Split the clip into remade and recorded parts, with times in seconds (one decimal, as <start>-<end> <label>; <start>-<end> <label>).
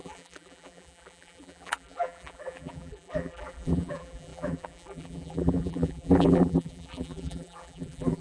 0.0-8.2 remade